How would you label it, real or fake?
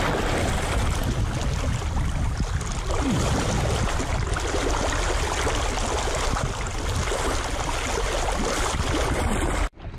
real